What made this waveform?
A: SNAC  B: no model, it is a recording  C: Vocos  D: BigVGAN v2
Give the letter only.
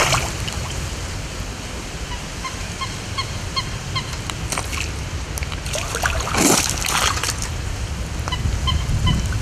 B